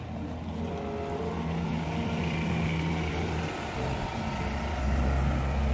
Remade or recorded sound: recorded